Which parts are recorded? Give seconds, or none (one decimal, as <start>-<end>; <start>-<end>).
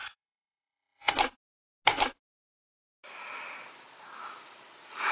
1.1-5.1